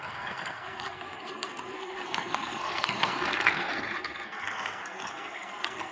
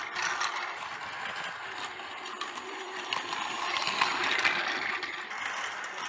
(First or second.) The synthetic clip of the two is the first